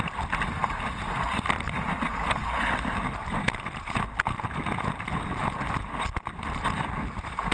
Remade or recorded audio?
recorded